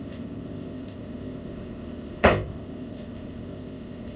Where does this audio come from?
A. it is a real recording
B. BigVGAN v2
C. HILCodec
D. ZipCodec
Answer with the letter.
D